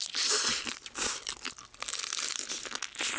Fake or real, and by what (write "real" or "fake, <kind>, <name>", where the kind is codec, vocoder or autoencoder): real